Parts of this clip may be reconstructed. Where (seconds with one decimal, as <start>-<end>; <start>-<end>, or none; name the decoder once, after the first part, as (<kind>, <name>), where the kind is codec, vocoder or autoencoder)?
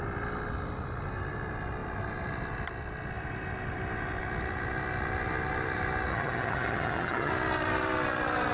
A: 6.1-7.3 (vocoder, HiFi-GAN)